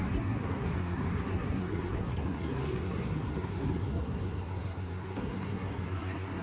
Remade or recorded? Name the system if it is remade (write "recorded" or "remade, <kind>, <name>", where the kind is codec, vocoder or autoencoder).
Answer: remade, codec, SNAC